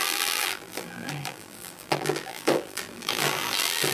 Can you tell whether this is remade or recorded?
remade